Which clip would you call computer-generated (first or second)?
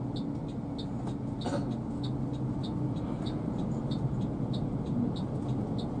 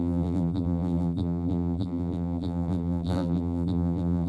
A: second